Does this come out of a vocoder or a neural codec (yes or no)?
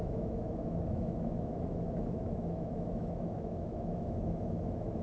yes